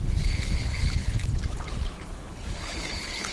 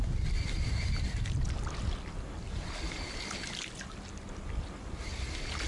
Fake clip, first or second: first